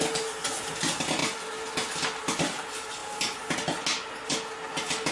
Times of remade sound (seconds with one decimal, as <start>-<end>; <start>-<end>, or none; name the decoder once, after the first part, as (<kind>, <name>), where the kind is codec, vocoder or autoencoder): none